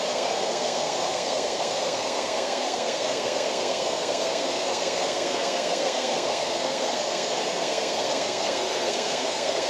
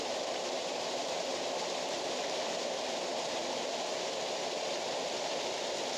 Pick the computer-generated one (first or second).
first